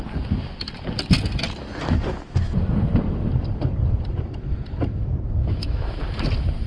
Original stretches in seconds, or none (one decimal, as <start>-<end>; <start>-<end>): 0.0-5.4; 6.0-6.7